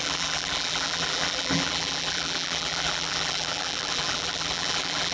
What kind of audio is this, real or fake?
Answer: fake